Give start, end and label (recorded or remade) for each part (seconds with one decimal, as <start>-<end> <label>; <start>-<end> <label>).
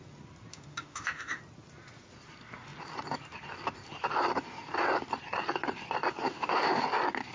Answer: 0.0-0.5 recorded; 0.5-1.4 remade; 1.4-6.3 recorded; 6.3-6.8 remade; 6.8-7.3 recorded